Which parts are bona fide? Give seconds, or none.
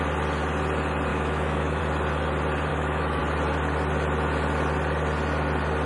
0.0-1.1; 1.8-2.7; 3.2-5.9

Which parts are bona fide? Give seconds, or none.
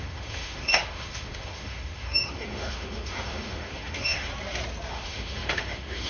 4.3-4.9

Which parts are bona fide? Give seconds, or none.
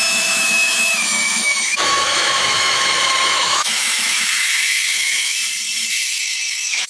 5.4-5.9